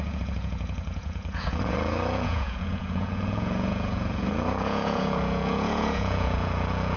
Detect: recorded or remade remade